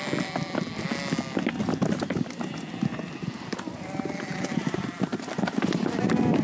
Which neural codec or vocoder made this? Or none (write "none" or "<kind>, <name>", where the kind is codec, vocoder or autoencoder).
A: none